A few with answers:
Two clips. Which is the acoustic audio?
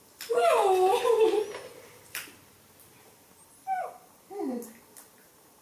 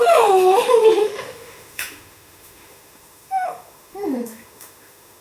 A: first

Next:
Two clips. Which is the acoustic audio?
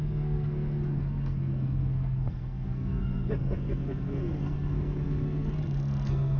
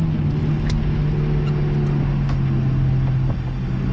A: second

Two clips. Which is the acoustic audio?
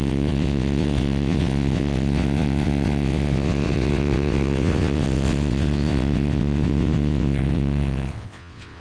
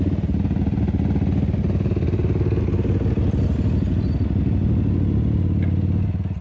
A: second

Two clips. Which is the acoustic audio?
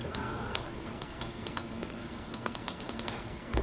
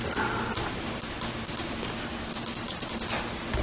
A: second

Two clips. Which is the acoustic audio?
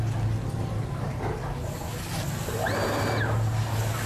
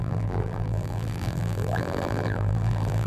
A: first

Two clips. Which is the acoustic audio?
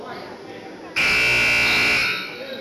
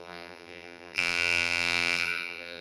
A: first